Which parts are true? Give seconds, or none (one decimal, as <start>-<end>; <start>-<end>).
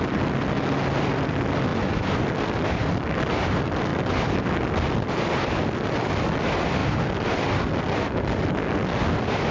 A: 0.0-9.5